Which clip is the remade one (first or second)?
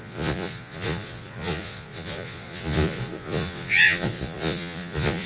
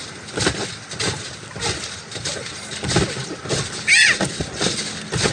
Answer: first